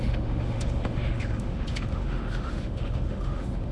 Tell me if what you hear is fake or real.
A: fake